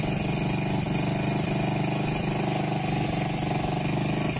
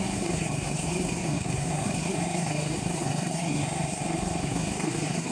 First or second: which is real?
first